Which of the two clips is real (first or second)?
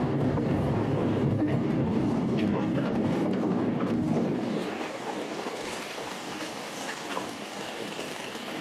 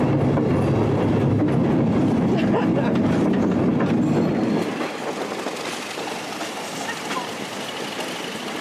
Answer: second